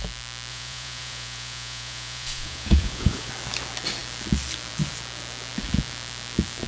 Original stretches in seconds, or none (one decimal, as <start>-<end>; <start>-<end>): 0.0-0.5; 3.3-6.7